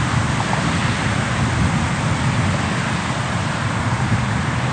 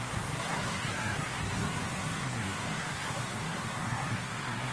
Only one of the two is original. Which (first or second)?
first